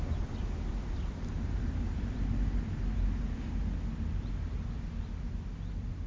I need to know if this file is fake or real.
real